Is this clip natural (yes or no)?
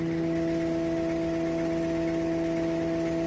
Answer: yes